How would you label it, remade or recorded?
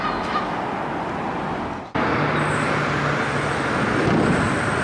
recorded